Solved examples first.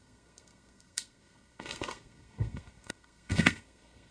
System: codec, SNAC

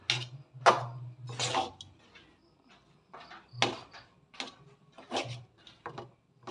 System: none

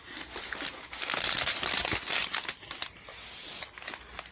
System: none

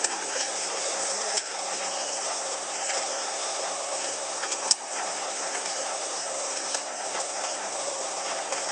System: codec, SNAC